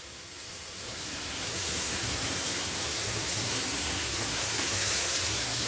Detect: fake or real fake